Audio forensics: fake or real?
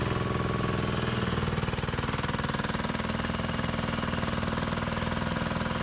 real